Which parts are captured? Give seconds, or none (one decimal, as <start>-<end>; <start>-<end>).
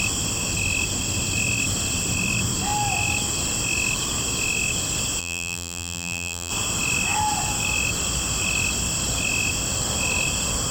0.0-5.2; 6.5-10.7